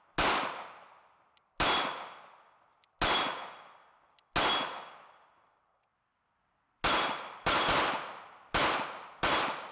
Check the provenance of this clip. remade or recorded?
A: recorded